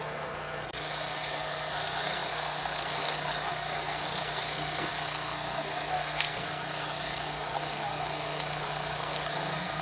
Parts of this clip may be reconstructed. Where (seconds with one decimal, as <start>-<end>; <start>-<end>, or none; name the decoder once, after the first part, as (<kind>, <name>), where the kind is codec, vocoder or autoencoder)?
0.0-9.8 (codec, SNAC)